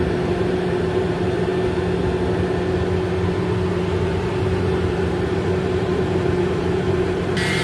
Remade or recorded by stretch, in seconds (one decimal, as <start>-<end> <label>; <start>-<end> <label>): 0.0-1.5 remade; 1.5-3.7 recorded; 3.7-7.6 remade